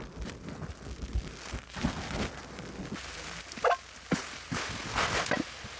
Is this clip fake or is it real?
real